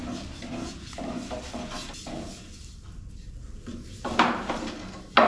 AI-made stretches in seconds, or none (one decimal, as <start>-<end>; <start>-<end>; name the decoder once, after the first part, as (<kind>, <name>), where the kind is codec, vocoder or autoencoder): 3.7-4.5 (vocoder, BigVGAN v2)